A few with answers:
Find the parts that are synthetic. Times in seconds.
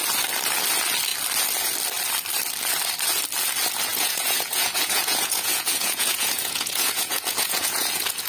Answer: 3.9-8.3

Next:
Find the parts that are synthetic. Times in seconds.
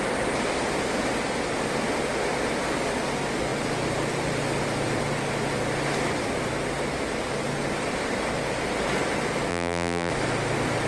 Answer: 9.5-10.1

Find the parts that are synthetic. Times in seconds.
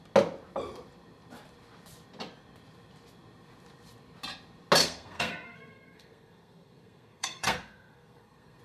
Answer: 4.8-8.6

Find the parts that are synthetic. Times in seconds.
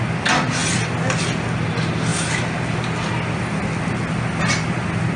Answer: none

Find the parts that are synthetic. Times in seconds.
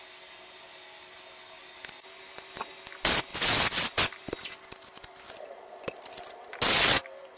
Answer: none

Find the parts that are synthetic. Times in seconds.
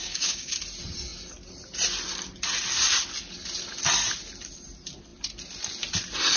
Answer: 0.0-0.5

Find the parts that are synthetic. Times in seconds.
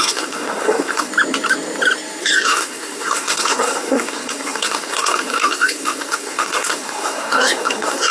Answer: 0.0-1.1; 2.2-8.1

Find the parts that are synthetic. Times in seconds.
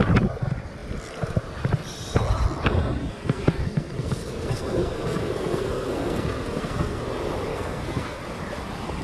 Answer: 3.0-7.0; 7.5-8.2